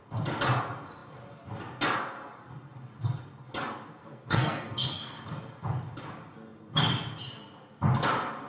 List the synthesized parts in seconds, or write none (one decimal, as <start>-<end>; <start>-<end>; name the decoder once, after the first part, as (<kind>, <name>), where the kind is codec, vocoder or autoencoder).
4.0-5.2 (codec, SNAC)